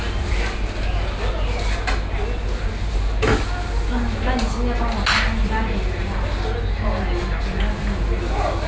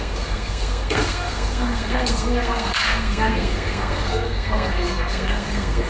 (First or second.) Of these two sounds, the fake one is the second